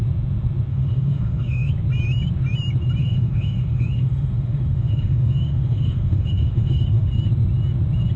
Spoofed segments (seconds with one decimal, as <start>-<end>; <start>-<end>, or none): 0.7-1.7; 3.0-7.1